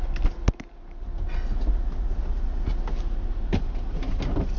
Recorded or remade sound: recorded